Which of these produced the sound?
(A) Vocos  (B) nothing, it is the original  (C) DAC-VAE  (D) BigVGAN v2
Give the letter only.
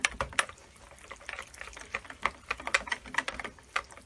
B